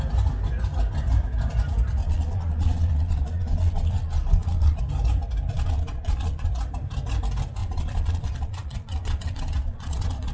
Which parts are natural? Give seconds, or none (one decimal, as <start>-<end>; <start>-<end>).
0.0-2.0; 4.8-5.5; 6.5-7.6